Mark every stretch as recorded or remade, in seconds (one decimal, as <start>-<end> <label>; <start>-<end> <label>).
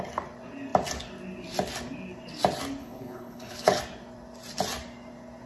0.0-2.8 recorded; 2.8-3.8 remade; 3.8-5.5 recorded